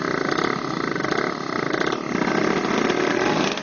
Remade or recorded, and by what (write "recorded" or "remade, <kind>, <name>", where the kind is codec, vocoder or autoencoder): recorded